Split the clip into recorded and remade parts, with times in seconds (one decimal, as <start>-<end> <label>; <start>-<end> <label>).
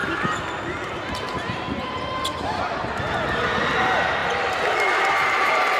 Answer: 0.0-2.6 remade; 2.6-4.2 recorded; 4.2-5.8 remade